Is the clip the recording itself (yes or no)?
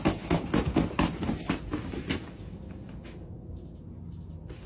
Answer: yes